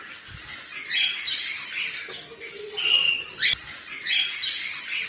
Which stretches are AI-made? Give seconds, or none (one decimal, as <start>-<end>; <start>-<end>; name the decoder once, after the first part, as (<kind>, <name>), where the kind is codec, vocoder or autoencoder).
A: none